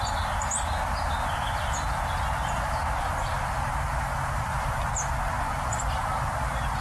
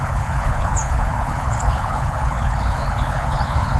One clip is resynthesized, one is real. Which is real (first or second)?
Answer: first